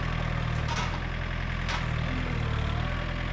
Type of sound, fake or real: real